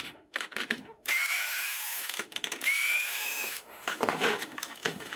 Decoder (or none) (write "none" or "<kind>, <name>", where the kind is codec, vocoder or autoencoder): autoencoder, DAC-VAE